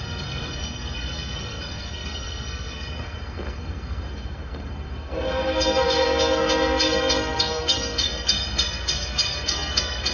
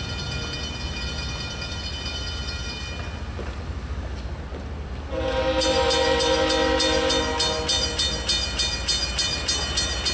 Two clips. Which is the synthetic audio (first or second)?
first